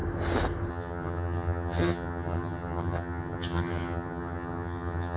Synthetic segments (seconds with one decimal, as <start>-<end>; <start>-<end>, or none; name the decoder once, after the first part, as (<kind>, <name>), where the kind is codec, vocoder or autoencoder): 0.7-5.2 (vocoder, HiFi-GAN)